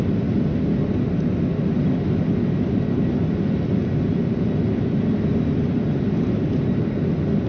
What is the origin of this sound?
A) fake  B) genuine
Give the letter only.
B